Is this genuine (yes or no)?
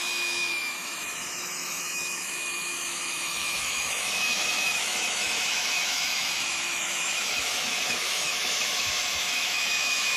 no